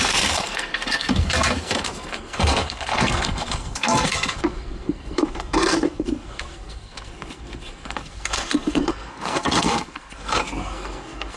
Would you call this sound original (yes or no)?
no